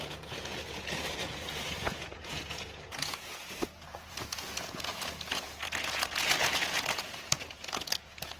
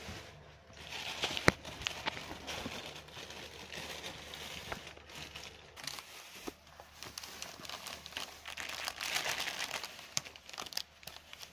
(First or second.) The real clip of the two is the second